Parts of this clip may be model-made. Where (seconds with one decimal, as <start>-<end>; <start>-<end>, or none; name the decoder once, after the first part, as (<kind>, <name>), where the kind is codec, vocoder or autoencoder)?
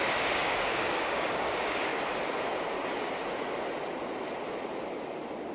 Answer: 0.0-1.9 (codec, DAC)